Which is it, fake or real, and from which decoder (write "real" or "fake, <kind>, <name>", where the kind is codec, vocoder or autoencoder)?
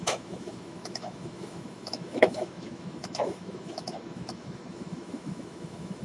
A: fake, autoencoder, DAC-VAE